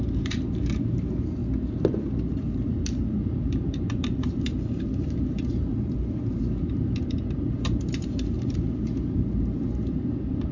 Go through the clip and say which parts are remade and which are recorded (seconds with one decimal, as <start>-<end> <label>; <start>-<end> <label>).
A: 0.0-1.4 remade; 1.4-2.0 recorded; 2.0-10.5 remade